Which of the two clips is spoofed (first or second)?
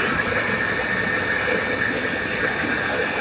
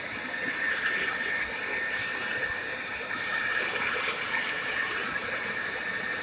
second